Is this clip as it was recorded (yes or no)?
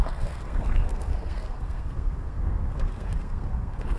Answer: no